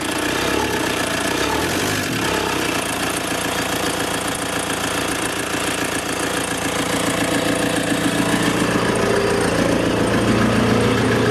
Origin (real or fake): real